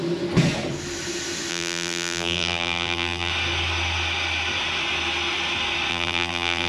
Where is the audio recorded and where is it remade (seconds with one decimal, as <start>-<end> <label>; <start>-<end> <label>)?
0.0-1.5 recorded; 1.5-3.3 remade; 3.3-5.9 recorded; 5.9-6.7 remade